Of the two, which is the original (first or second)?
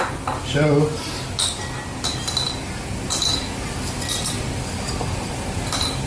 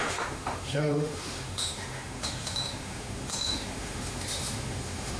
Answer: first